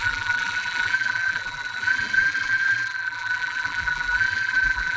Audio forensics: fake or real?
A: fake